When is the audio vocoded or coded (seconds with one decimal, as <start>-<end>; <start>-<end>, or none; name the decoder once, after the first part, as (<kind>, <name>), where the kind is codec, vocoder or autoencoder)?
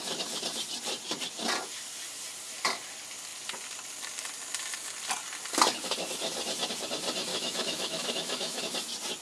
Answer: 7.3-8.6 (autoencoder, DAC-VAE)